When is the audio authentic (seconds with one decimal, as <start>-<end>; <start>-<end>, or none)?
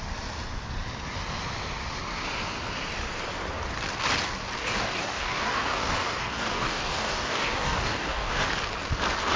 0.0-4.6; 8.5-9.4